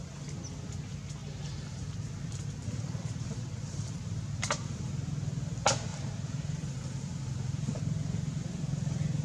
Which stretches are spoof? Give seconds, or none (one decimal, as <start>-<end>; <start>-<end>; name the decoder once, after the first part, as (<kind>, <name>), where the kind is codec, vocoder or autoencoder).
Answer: 1.2-4.9 (vocoder, BigVGAN v2); 5.9-7.8